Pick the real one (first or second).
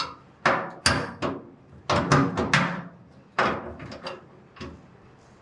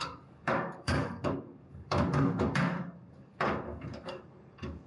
first